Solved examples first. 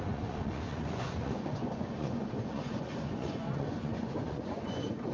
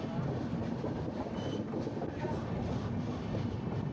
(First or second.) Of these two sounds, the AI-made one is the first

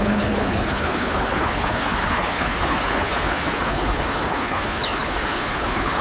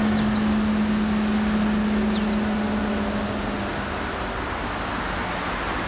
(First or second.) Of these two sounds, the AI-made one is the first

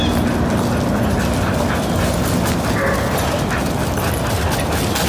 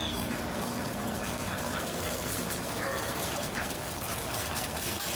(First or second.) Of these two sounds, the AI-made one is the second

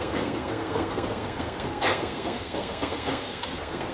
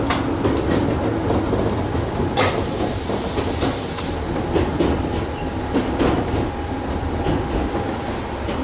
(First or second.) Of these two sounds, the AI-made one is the first